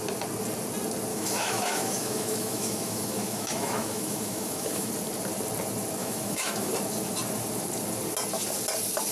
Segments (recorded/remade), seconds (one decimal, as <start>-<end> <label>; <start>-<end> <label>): 0.0-1.1 recorded; 1.1-4.9 remade; 4.9-6.0 recorded; 6.0-6.7 remade; 6.7-9.1 recorded